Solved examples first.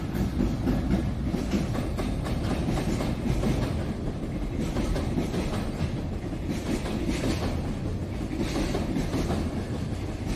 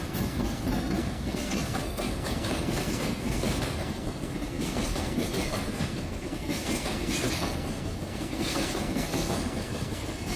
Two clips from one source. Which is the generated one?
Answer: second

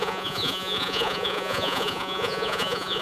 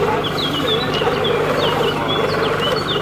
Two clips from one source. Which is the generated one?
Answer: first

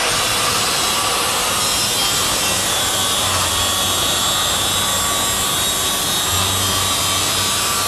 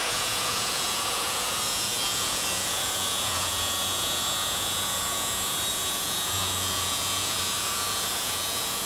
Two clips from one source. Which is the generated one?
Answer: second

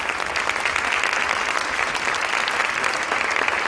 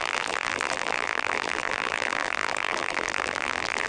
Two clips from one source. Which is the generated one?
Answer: second